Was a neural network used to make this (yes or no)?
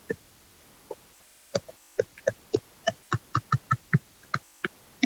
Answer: no